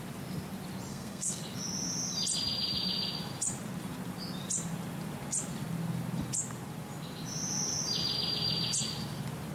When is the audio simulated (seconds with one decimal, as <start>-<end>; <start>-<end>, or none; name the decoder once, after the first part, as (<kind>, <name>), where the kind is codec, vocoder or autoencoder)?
0.9-1.4 (codec, SNAC)